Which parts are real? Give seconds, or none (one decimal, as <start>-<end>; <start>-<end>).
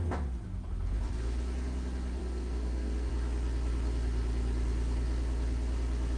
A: 0.0-2.2; 3.1-6.2